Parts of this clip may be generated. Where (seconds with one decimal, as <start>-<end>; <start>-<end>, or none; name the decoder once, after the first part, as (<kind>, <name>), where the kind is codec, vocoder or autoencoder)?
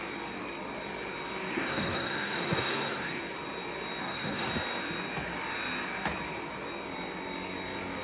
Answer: 1.5-3.2 (codec, SNAC); 4.0-4.5